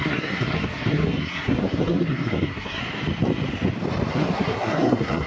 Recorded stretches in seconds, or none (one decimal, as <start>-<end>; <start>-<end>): 2.8-4.1